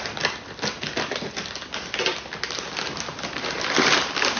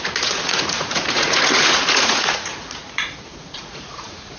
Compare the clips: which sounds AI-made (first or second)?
second